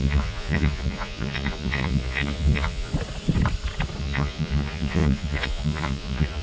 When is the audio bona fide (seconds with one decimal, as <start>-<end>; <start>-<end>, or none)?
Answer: 2.9-4.0